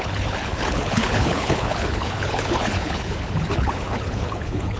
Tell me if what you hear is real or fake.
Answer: fake